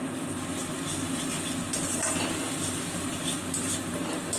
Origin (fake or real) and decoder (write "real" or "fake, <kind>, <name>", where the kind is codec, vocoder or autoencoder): real